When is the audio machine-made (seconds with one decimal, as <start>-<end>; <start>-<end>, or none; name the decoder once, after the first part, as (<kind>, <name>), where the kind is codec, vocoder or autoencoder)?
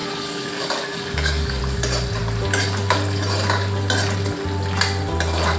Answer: 0.0-1.6 (codec, DAC)